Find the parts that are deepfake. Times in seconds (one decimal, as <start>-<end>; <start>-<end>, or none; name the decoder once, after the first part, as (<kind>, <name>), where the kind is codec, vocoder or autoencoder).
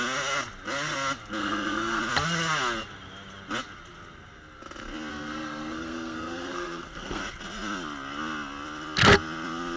1.4-2.0 (codec, SNAC); 5.1-7.2